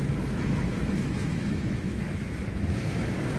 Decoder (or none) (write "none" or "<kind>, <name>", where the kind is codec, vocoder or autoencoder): autoencoder, DAC-VAE